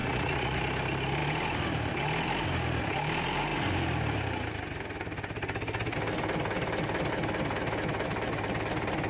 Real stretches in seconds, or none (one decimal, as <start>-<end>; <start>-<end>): 0.6-9.1